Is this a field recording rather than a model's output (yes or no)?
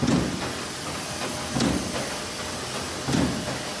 yes